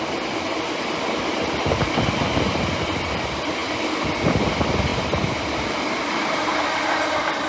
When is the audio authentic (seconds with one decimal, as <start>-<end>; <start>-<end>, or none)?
0.0-7.5